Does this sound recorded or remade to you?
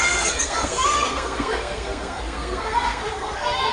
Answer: remade